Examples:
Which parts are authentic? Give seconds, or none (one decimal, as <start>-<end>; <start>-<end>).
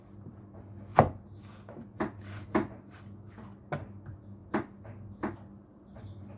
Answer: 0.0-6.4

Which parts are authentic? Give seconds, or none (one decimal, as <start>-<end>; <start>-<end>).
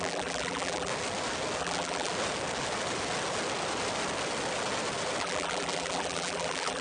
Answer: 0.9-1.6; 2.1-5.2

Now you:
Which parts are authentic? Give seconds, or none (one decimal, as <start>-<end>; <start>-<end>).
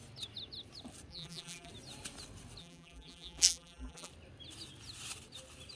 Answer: 0.0-1.1; 1.7-2.6; 4.1-5.8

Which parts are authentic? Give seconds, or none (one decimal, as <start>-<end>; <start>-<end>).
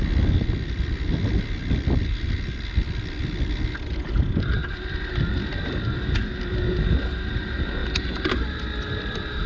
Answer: 0.0-7.8; 8.6-9.5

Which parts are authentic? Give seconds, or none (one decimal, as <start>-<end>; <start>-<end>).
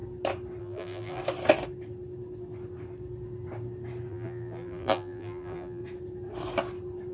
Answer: 0.0-0.6; 1.2-4.1; 5.8-7.1